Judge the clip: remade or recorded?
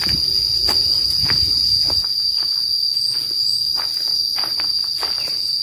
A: recorded